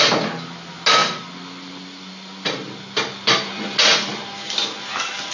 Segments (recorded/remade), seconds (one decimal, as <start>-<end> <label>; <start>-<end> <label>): 0.0-5.3 recorded